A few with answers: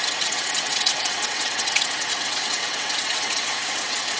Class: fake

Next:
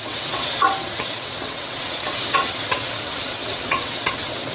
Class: fake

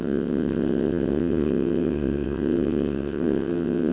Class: fake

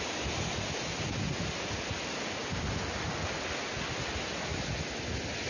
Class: real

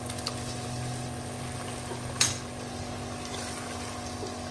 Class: real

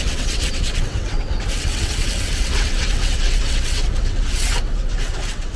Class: fake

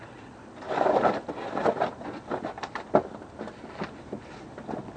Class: real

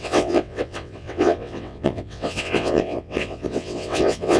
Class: fake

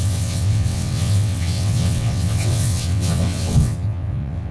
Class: fake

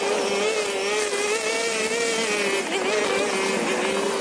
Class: real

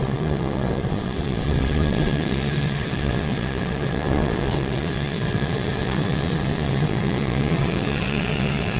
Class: fake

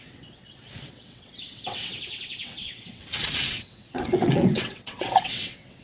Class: fake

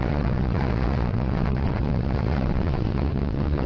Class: fake